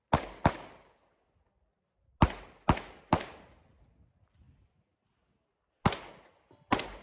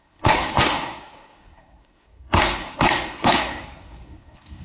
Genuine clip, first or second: first